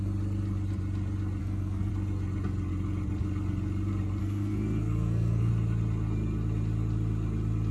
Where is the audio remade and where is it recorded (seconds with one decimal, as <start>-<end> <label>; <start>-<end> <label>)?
0.0-1.4 recorded; 1.4-1.9 remade; 1.9-4.2 recorded; 4.2-5.5 remade; 5.5-7.7 recorded

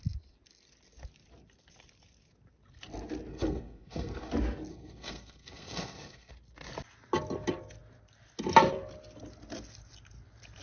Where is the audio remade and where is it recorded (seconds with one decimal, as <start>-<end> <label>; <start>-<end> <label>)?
0.0-3.3 recorded; 3.3-4.3 remade; 4.3-4.7 recorded; 4.7-6.3 remade; 6.3-10.6 recorded

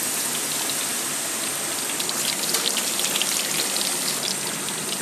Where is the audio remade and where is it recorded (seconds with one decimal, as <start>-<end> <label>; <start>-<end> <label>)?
0.0-5.0 recorded

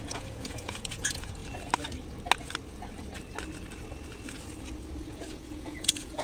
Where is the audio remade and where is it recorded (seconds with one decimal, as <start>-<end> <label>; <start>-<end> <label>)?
0.0-1.4 remade; 1.4-5.1 recorded; 5.1-6.2 remade

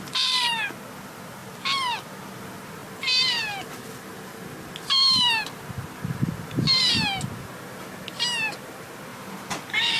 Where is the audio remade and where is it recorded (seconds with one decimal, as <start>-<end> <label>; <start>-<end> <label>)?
0.0-1.4 recorded; 1.4-2.4 remade; 2.4-9.1 recorded; 9.1-10.0 remade

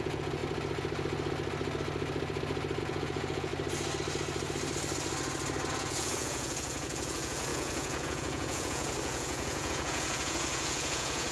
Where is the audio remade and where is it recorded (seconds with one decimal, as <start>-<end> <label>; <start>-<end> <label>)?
0.0-0.4 remade; 0.4-2.8 recorded; 2.8-3.5 remade; 3.5-5.7 recorded; 5.7-11.3 remade